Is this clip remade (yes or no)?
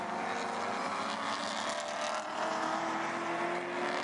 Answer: no